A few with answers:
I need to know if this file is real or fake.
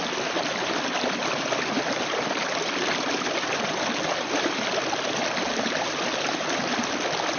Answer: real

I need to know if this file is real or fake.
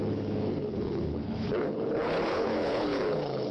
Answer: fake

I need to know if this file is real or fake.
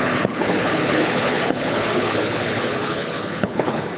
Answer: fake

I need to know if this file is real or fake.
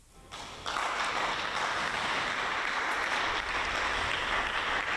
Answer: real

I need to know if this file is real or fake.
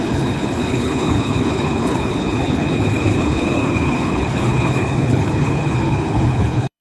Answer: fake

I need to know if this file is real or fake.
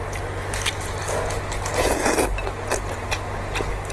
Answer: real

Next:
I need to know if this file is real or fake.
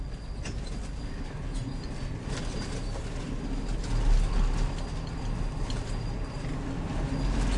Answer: real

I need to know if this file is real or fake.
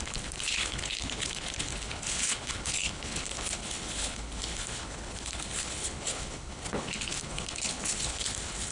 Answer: fake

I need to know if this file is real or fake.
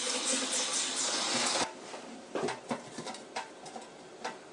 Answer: real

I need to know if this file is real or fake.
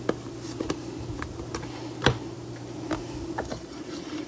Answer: real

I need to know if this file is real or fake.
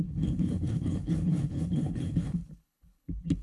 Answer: fake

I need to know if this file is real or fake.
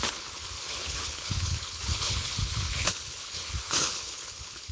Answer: fake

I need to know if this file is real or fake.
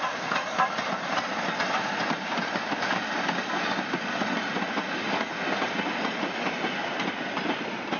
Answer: real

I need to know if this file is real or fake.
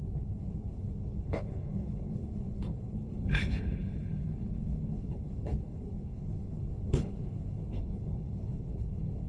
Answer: fake